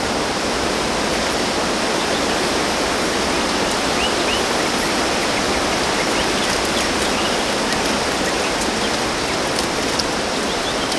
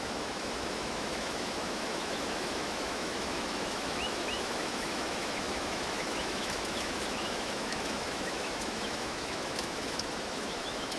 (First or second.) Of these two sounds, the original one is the first